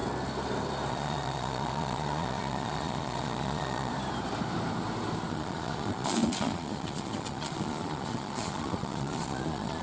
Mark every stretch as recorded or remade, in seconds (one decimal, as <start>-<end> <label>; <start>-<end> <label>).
0.0-0.9 recorded; 0.9-3.9 remade; 3.9-5.3 recorded; 5.3-9.8 remade